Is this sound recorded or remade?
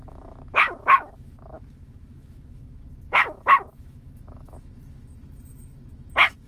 remade